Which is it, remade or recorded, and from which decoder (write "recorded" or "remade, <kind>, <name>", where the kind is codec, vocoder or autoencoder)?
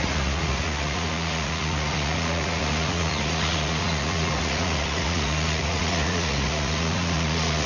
remade, vocoder, Vocos